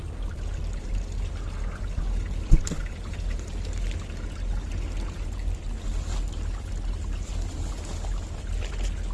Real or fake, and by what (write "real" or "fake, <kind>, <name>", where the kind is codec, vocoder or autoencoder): real